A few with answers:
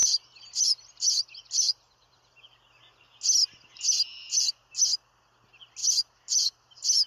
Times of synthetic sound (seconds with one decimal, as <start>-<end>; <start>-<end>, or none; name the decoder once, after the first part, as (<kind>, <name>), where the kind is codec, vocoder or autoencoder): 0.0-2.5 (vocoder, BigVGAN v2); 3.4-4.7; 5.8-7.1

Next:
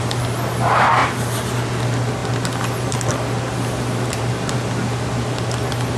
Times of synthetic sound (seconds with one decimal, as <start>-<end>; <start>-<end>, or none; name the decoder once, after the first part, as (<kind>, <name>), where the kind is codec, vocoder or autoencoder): 1.0-1.5 (vocoder, BigVGAN v2)

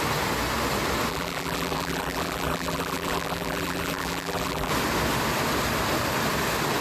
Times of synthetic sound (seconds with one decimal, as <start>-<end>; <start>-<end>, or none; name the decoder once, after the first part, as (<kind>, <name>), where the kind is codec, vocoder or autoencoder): 1.1-4.7 (vocoder, BigVGAN v2)

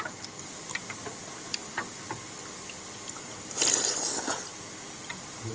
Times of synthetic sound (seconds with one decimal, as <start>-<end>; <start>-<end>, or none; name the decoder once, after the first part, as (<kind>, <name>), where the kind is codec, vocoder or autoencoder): 0.0-1.7 (vocoder, BigVGAN v2); 2.5-4.5

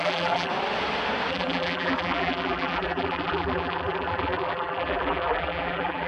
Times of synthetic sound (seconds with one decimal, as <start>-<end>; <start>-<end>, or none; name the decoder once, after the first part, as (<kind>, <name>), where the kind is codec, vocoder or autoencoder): 0.0-0.5 (vocoder, BigVGAN v2); 1.3-6.1

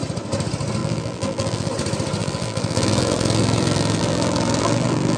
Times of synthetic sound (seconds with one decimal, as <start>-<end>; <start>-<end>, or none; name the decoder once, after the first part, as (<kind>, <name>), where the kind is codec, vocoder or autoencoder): 0.8-1.7 (vocoder, BigVGAN v2); 2.2-5.2